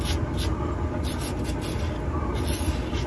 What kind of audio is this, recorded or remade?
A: recorded